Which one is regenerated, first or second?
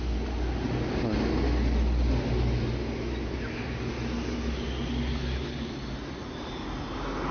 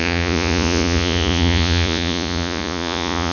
second